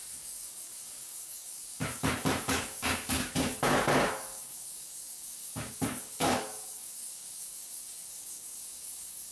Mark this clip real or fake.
fake